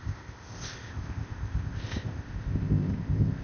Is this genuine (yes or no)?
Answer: no